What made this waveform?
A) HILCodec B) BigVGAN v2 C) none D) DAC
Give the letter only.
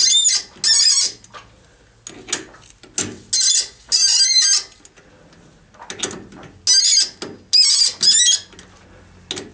C